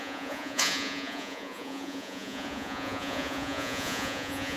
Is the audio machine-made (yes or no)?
yes